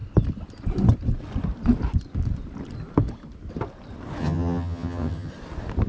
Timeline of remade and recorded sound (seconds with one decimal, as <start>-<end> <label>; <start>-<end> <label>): 0.0-4.2 recorded; 4.2-5.3 remade; 5.3-5.9 recorded